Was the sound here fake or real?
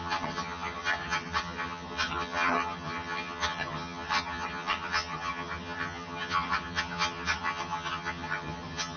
fake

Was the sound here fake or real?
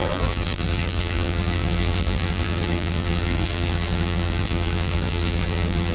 fake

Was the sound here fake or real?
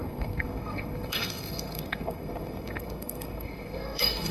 fake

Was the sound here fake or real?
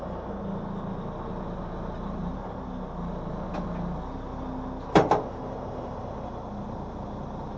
real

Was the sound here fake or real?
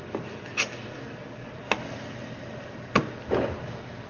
real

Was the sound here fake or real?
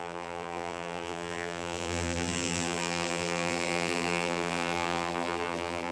fake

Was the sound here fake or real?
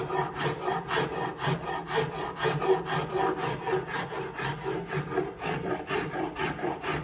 real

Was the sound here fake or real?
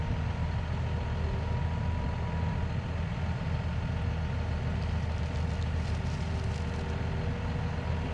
real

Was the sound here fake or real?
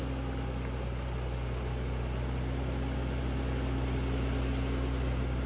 real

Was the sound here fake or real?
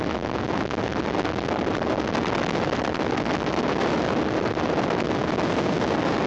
real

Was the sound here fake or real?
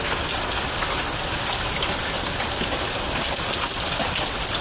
fake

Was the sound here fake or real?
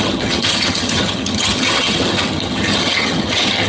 fake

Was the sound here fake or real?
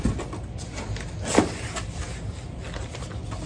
real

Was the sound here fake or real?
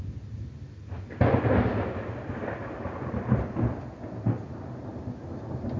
real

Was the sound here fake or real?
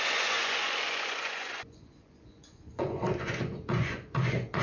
fake